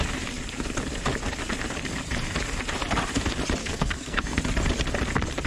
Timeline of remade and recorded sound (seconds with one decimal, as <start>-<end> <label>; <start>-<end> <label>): 0.0-3.6 recorded; 3.6-4.4 remade; 4.4-5.5 recorded